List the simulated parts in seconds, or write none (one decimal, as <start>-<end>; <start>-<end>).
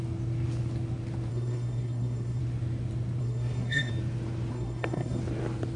1.3-2.4; 3.2-3.9; 4.5-5.2